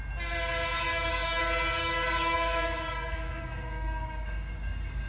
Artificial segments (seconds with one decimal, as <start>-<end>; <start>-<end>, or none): 0.9-1.4; 1.8-5.1